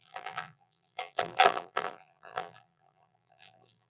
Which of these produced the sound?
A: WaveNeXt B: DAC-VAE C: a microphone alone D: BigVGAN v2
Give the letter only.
D